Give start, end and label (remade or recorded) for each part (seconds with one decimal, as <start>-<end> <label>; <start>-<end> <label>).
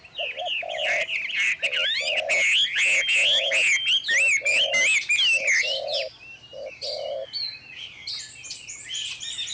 0.0-9.5 recorded